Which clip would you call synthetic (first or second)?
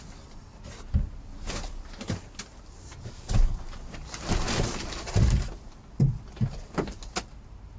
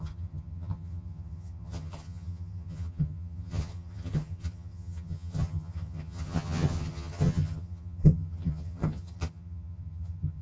second